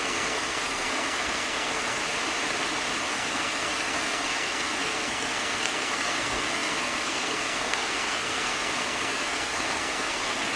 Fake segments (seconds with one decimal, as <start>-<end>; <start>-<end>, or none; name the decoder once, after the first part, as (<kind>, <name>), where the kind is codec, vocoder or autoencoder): 0.0-2.0 (codec, SNAC); 3.0-10.6